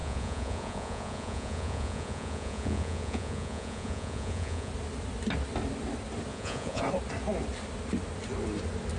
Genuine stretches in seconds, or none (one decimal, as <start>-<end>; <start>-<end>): 4.7-6.3; 6.8-9.0